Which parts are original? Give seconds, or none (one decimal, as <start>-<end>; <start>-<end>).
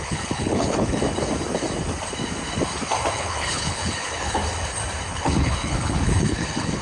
1.0-3.1; 4.4-5.1